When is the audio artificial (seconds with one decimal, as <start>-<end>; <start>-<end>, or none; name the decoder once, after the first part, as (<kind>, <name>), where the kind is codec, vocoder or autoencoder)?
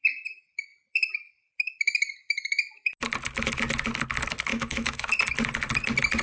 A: 4.5-5.1 (autoencoder, DAC-VAE)